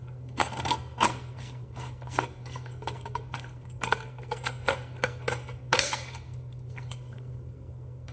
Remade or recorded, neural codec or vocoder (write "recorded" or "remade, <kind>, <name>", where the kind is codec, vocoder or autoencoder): remade, codec, SNAC